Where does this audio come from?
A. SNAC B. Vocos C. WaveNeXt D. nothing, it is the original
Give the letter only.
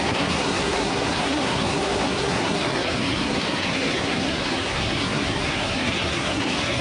A